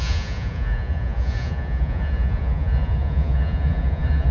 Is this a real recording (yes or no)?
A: no